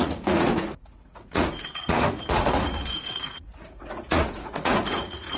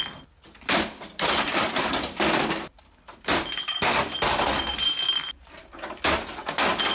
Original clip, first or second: second